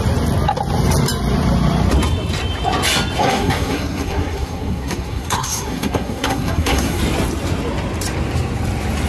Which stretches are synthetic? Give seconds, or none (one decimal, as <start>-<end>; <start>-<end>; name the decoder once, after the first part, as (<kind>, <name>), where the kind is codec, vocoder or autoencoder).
3.2-7.0 (codec, SNAC)